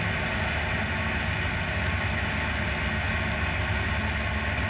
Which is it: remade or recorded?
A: recorded